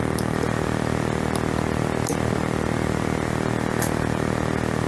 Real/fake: real